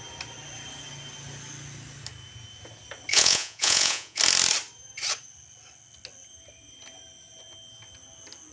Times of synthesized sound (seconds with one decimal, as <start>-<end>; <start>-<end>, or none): 3.1-4.2